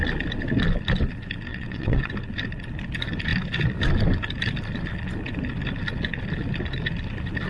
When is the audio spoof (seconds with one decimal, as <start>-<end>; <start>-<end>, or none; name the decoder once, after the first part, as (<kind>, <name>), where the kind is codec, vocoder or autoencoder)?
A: 1.5-2.1 (vocoder, WaveNeXt)